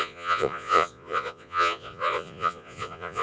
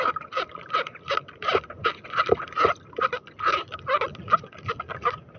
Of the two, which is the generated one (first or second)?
first